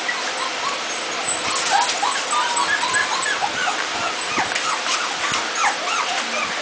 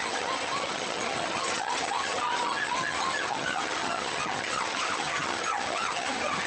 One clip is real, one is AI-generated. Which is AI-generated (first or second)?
second